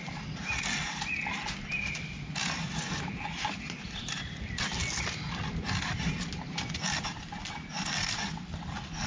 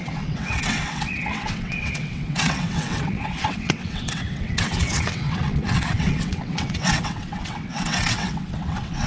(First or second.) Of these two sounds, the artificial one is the second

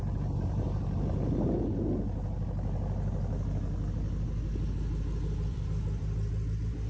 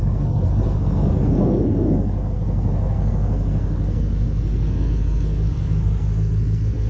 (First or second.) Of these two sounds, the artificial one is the second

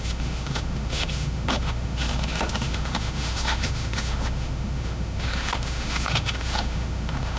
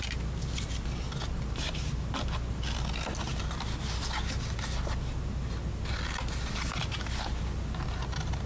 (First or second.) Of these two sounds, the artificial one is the first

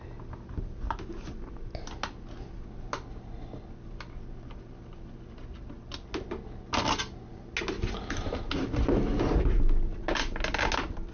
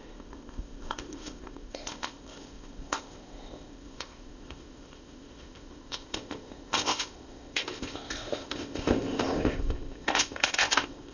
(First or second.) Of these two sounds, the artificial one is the second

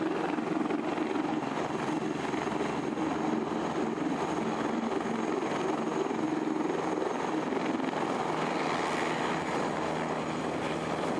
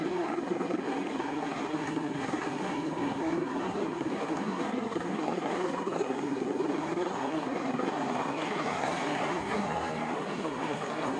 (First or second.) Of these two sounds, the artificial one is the second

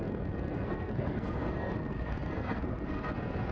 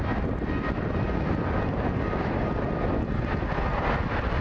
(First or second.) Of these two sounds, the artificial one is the first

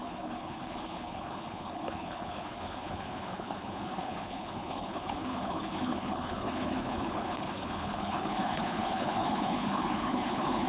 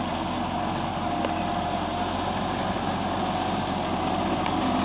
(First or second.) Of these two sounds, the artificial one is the first